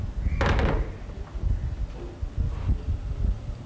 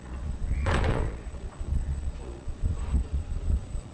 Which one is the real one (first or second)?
first